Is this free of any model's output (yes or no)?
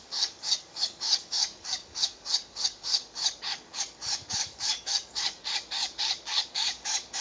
no